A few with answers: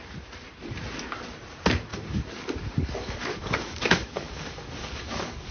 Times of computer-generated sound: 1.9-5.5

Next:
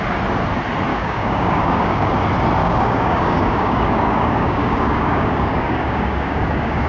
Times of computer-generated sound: 0.9-2.1; 2.6-6.9

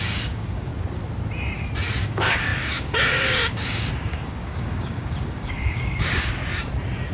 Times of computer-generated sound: 0.0-0.7; 2.0-6.4

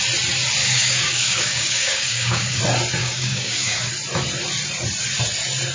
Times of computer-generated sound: 0.6-2.6; 3.0-3.9

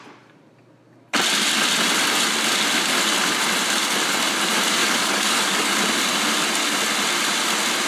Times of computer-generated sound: 4.8-5.8

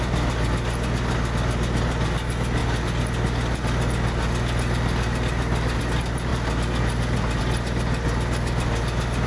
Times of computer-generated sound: none

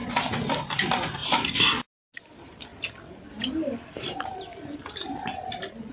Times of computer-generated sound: none

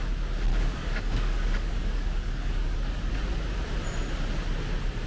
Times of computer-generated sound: 0.5-3.1